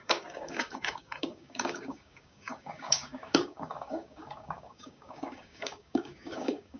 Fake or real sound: fake